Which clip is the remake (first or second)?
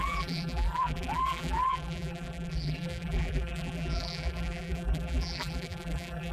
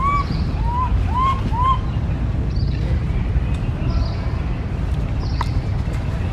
first